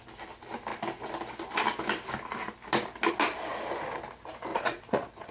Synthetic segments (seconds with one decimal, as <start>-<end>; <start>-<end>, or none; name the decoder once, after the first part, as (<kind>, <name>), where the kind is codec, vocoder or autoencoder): 4.5-5.3 (vocoder, Vocos)